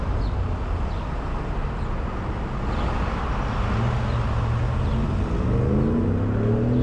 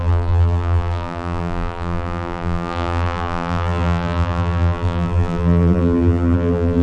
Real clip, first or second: first